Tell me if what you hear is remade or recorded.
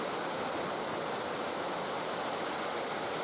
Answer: recorded